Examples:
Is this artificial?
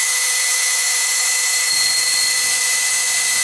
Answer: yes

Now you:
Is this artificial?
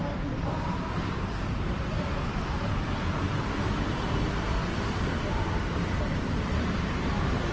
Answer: yes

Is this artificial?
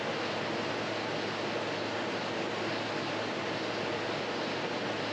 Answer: no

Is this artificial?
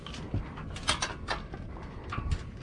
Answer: no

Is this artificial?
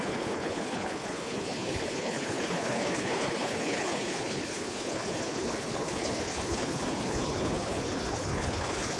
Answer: yes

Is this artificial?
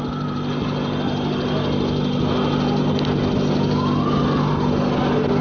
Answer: no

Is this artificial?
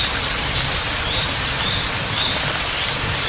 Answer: no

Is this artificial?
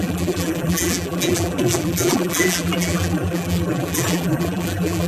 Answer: yes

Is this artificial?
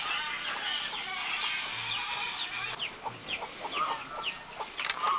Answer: no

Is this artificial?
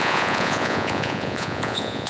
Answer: yes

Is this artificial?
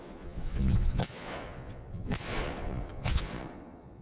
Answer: yes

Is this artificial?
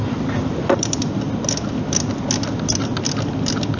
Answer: no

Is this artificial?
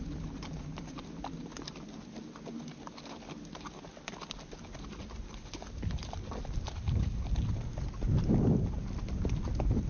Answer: no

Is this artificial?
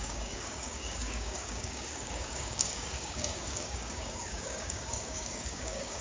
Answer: yes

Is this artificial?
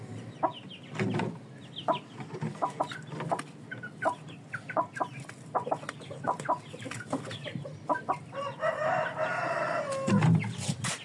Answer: no